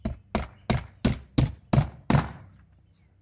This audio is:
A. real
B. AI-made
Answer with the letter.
A